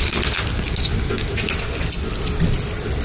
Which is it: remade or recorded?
recorded